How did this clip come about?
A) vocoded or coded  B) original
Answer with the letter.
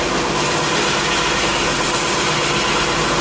B